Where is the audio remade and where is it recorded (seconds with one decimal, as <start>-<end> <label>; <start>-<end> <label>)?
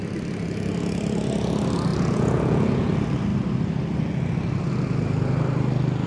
0.0-1.9 recorded; 1.9-2.9 remade; 2.9-6.1 recorded